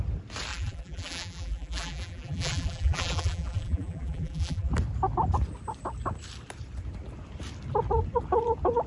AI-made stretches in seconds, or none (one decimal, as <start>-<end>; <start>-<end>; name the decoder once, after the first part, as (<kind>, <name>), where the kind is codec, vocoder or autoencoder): 0.5-4.7 (vocoder, BigVGAN v2)